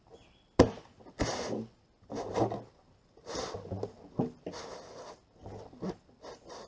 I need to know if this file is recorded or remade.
recorded